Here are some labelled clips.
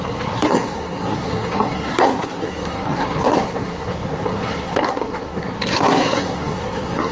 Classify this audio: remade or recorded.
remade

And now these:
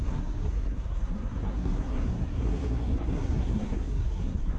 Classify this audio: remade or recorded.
remade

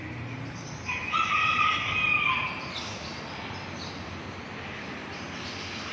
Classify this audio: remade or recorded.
recorded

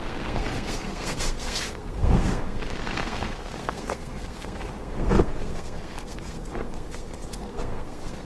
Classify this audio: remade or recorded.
remade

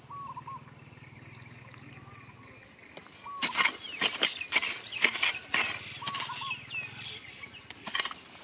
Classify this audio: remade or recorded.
recorded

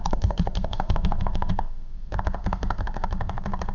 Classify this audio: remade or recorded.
remade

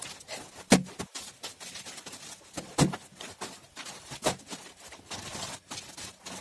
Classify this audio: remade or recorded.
recorded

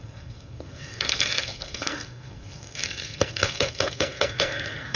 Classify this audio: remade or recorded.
remade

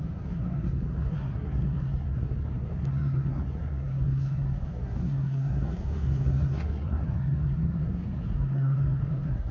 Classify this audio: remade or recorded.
remade